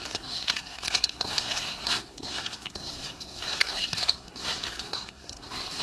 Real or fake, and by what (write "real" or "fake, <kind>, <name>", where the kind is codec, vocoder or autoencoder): fake, codec, SNAC